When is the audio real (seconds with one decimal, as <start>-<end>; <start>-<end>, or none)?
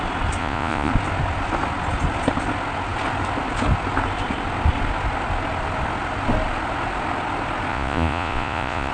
0.0-0.4; 0.9-7.7